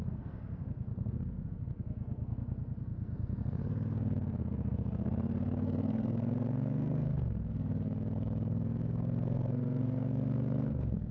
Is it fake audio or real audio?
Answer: fake